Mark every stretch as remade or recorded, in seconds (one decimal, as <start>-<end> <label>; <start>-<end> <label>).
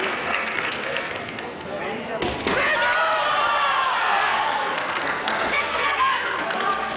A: 0.0-1.8 remade; 1.8-4.0 recorded; 4.0-7.0 remade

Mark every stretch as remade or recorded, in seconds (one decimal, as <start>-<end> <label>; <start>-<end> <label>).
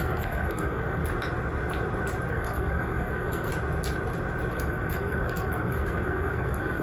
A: 0.0-1.0 remade; 1.0-2.3 recorded; 2.3-3.5 remade; 3.5-4.5 recorded; 4.5-6.8 remade